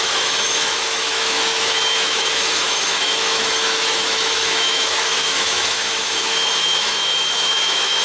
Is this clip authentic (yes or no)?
no